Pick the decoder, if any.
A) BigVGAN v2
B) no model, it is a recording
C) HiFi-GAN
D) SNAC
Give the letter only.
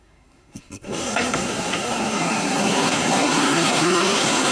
D